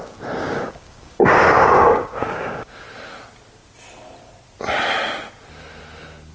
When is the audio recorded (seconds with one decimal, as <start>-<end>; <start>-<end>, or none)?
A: 0.0-0.4; 2.8-6.3